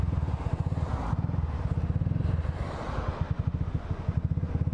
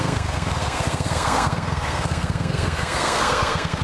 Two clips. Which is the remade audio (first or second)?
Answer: second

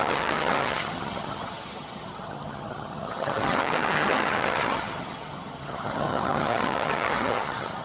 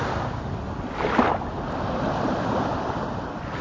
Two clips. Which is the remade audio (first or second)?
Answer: first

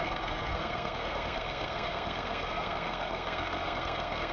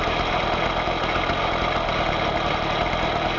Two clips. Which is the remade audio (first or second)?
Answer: first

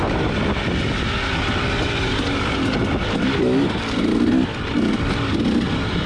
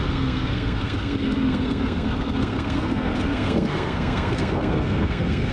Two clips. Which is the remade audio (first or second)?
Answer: second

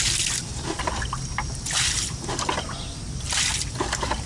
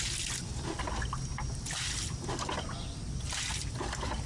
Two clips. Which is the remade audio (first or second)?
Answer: first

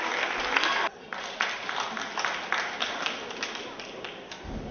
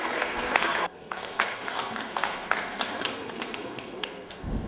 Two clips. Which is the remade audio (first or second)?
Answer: second